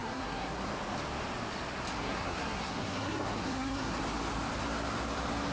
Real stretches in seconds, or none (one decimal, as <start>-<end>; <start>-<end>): 0.7-1.9; 4.0-5.5